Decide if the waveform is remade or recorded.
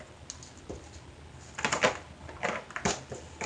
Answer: recorded